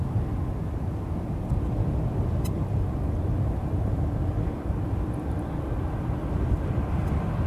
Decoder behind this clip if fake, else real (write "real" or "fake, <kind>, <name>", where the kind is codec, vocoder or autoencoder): real